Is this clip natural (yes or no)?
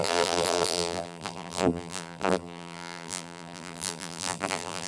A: no